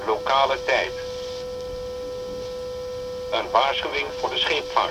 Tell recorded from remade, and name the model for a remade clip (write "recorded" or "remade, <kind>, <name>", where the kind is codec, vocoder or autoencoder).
recorded